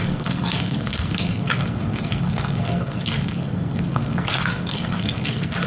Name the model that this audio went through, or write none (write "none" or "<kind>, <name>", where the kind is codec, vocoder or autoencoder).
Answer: codec, SNAC